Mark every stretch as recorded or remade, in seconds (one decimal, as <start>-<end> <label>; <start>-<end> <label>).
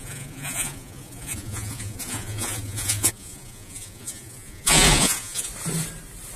0.0-5.5 remade; 5.5-6.4 recorded